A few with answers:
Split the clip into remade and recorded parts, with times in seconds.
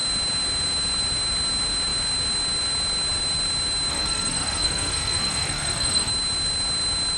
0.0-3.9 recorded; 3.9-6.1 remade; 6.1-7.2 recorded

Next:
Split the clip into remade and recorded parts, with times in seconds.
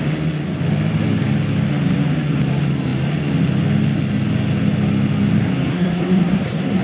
0.0-5.7 recorded; 5.7-6.8 remade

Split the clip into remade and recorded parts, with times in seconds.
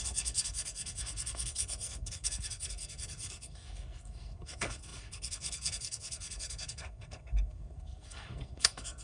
0.0-9.0 remade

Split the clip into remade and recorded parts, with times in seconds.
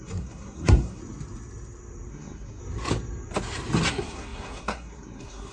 0.0-1.0 remade; 1.0-2.1 recorded; 2.1-2.6 remade; 2.6-3.9 recorded; 3.9-5.5 remade